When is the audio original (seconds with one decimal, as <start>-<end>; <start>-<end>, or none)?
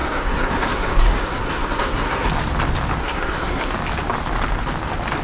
2.3-3.0; 3.7-5.2